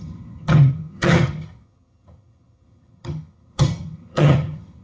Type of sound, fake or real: fake